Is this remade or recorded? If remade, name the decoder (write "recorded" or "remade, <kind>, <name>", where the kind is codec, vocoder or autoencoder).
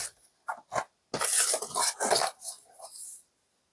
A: recorded